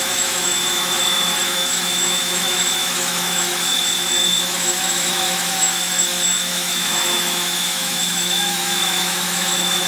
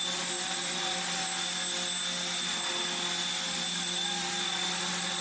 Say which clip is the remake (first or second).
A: first